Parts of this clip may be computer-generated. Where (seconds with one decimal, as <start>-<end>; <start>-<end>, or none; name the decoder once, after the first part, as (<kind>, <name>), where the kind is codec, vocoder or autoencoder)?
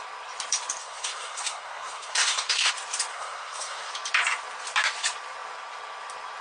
0.8-2.7 (codec, SNAC); 3.1-3.9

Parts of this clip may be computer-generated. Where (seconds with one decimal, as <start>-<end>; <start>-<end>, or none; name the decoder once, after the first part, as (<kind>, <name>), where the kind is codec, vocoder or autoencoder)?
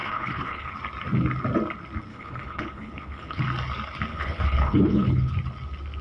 0.0-0.7 (codec, HILCodec); 2.1-3.4; 4.1-5.3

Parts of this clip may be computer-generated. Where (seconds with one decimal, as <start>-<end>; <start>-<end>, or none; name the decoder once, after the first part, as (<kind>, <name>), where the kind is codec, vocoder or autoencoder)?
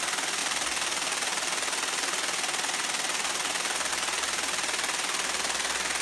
none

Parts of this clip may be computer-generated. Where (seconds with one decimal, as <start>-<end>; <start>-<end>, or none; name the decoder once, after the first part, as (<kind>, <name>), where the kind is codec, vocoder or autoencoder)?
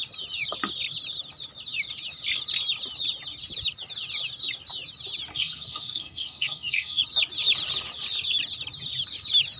5.3-7.0 (codec, SNAC)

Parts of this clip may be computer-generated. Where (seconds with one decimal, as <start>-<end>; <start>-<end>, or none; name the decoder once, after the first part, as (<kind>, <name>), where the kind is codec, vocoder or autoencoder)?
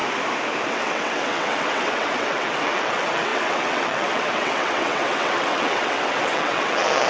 0.7-7.1 (vocoder, WaveNeXt)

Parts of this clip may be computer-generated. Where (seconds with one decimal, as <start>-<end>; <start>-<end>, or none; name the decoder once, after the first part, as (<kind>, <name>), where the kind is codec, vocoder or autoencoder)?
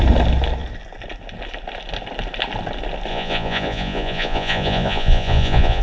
3.1-5.8 (vocoder, Vocos)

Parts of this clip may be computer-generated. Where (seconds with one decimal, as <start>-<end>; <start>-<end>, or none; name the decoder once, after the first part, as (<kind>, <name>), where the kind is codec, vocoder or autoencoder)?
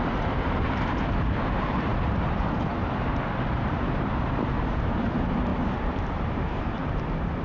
0.0-5.5 (vocoder, BigVGAN v2); 6.1-6.8